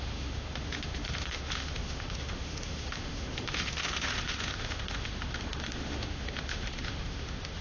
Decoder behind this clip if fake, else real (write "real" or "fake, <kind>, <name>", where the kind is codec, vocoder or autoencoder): fake, autoencoder, DAC-VAE